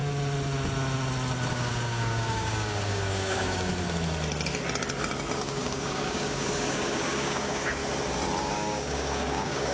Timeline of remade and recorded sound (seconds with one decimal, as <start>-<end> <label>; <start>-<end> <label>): 0.0-1.5 recorded; 1.5-3.7 remade; 3.7-5.4 recorded; 5.4-7.8 remade; 7.8-8.4 recorded; 8.4-9.7 remade